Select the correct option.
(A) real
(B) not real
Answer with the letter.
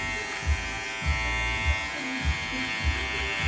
A